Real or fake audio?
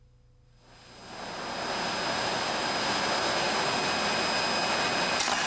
real